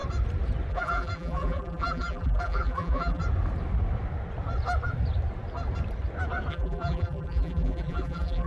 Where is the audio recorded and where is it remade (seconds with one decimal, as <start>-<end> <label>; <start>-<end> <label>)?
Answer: 0.0-0.7 recorded; 0.7-3.2 remade; 3.2-6.5 recorded; 6.5-8.5 remade